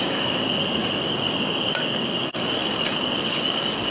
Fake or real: fake